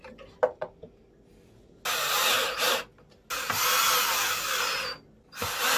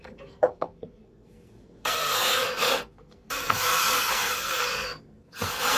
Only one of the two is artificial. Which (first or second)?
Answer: second